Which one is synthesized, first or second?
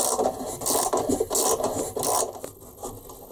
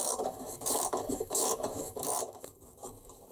second